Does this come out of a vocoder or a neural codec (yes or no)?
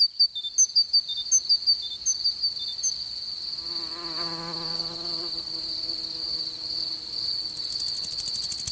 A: no